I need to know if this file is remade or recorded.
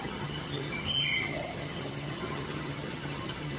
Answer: remade